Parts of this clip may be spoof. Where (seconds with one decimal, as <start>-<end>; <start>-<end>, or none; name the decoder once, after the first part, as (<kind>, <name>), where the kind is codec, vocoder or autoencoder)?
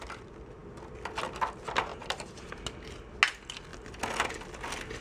1.9-2.5 (vocoder, BigVGAN v2)